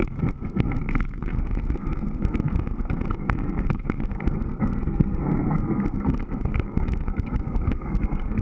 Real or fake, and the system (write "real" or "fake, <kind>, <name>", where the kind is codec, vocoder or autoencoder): fake, codec, SNAC